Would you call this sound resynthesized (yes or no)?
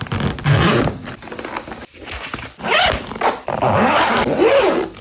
no